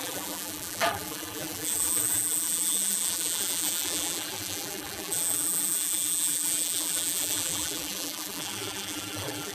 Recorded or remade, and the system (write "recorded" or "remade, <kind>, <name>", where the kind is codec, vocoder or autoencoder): remade, vocoder, BigVGAN v2